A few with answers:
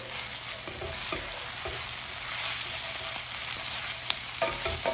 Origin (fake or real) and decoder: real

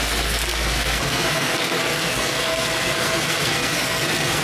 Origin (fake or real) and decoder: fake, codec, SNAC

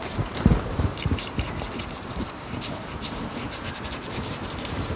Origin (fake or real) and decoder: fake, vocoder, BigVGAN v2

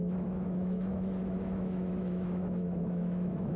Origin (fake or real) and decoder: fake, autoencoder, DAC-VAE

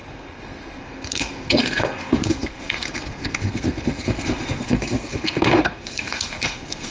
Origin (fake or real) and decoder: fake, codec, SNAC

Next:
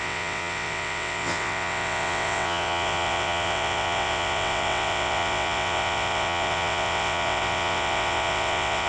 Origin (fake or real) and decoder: fake, vocoder, WaveNeXt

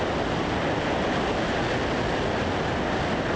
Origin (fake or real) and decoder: real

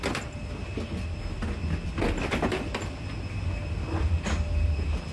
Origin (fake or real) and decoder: real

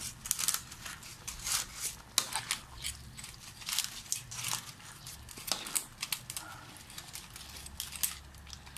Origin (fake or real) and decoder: real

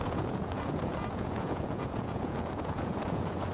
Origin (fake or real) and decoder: fake, vocoder, Vocos